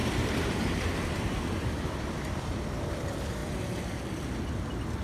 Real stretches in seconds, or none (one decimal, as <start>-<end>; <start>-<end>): 3.0-3.4; 4.4-5.0